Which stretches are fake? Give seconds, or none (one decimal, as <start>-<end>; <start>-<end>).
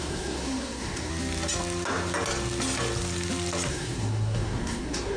0.0-1.1; 3.7-5.2